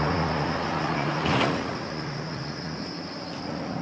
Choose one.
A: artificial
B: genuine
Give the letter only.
A